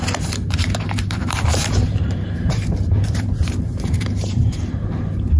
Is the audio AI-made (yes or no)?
yes